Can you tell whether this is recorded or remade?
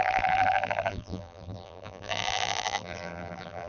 remade